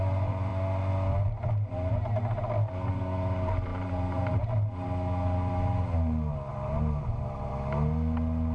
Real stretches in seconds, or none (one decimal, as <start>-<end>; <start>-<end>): 0.0-3.7; 4.5-6.5; 7.5-8.5